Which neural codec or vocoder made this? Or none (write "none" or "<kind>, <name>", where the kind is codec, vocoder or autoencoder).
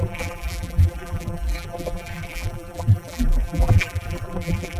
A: vocoder, BigVGAN v2